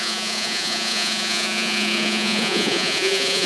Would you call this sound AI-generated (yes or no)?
yes